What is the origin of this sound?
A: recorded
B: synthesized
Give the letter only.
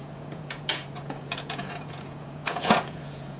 B